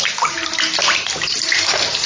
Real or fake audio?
real